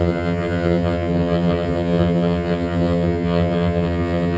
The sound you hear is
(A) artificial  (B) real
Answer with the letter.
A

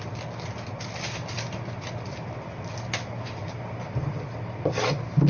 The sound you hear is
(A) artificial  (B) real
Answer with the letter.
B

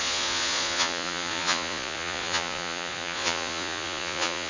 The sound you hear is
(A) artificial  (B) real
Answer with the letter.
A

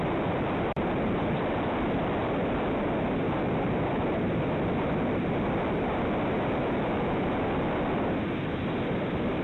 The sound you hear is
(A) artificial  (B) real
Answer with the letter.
B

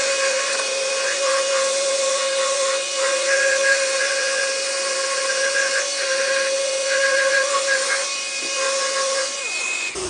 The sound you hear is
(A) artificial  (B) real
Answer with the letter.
A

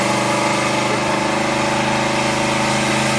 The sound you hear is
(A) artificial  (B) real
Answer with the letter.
B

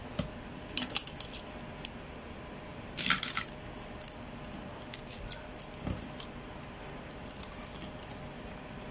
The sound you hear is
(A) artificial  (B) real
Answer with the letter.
B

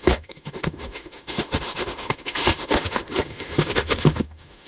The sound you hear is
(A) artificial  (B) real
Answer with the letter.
A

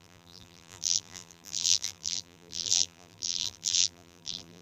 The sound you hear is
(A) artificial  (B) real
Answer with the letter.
A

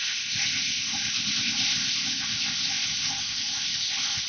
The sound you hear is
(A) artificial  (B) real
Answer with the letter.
A